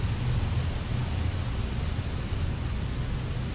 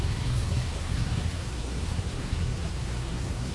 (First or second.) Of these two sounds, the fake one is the second